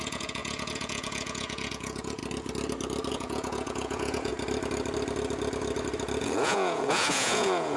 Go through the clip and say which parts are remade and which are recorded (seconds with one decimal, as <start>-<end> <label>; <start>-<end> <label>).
0.0-2.2 remade; 2.2-3.1 recorded; 3.1-4.3 remade; 4.3-6.2 recorded; 6.2-7.8 remade